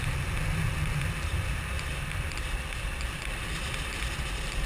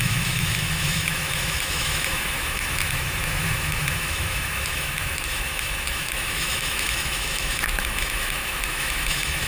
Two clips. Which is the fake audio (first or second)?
second